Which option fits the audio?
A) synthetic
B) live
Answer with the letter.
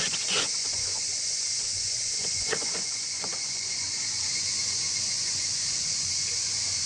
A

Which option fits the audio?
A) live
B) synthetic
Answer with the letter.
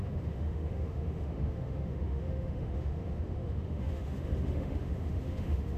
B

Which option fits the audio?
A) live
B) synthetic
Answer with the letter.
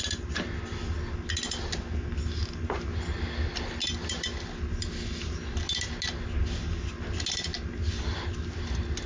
A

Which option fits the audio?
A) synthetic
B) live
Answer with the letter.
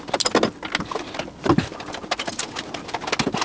B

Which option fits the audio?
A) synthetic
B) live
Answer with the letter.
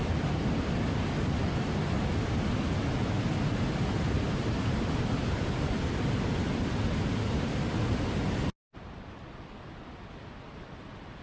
B